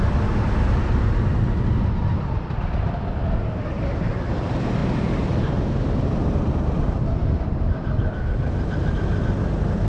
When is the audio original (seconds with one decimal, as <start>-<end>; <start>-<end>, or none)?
0.0-4.8; 6.8-9.9